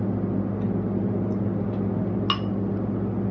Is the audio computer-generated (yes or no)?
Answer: no